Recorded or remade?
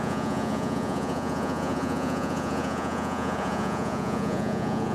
remade